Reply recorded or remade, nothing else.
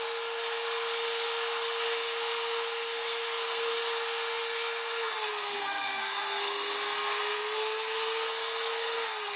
remade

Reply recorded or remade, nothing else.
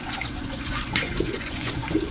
remade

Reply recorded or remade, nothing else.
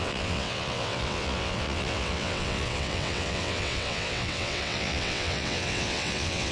remade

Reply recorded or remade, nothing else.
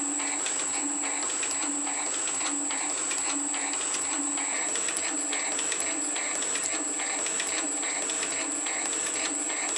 recorded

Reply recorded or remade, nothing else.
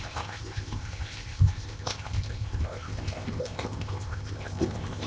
remade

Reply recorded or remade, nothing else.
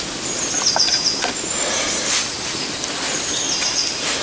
recorded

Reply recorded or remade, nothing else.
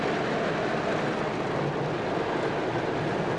recorded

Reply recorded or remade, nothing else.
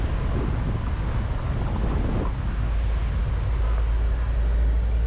recorded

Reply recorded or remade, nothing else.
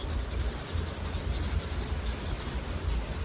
recorded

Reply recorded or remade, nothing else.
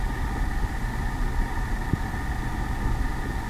recorded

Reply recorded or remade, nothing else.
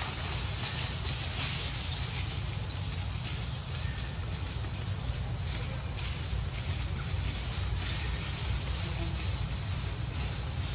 recorded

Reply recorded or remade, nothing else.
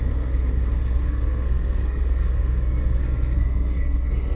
remade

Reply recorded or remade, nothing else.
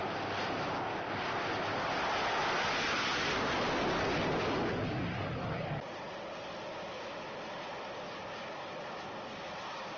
recorded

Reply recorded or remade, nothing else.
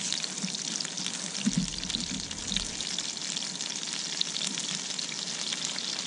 recorded